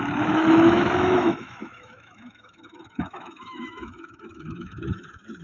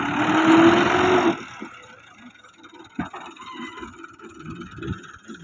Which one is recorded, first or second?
second